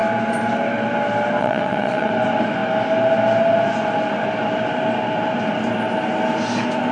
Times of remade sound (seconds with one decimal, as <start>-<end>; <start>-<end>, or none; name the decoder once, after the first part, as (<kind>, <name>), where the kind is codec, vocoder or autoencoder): 1.4-2.1 (vocoder, WaveNeXt)